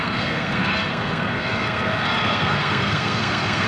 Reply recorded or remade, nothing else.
remade